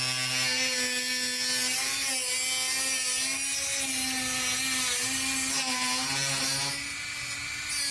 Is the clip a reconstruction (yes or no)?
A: no